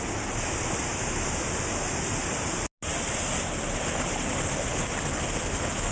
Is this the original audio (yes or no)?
yes